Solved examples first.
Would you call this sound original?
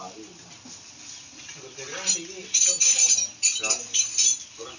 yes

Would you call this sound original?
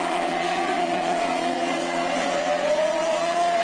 no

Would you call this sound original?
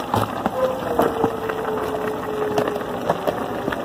yes